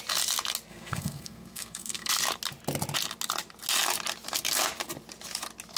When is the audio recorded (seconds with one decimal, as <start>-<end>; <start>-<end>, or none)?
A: 0.0-0.7; 2.1-5.8